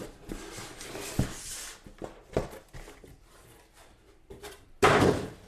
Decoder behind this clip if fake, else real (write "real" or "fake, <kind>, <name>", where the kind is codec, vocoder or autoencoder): real